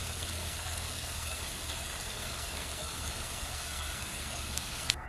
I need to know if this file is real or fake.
fake